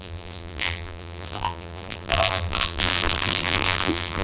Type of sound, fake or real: fake